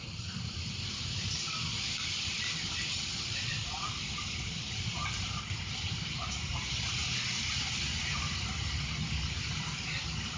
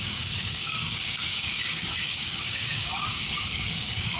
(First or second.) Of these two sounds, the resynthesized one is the second